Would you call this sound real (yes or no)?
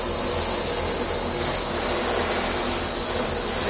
yes